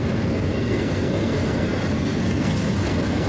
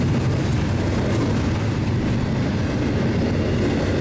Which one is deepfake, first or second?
first